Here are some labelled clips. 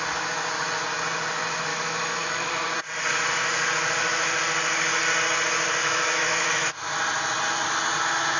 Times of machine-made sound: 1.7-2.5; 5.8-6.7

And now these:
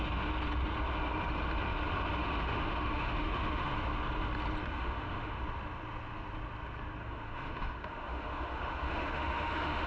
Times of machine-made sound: 2.2-3.7; 4.6-5.4; 7.0-9.9

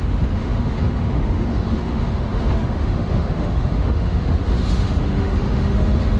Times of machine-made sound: 0.0-6.2

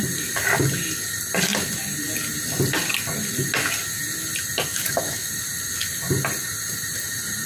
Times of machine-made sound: 4.7-5.3

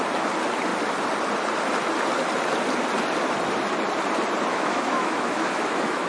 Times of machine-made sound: 4.5-6.1

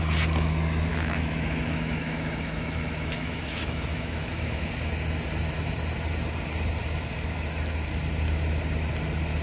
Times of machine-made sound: 0.9-4.7

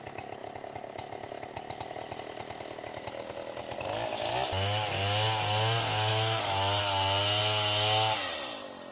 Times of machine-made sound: 6.1-6.8

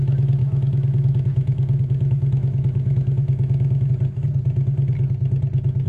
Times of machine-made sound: 0.4-3.9